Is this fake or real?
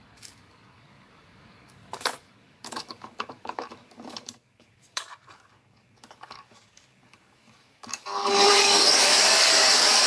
fake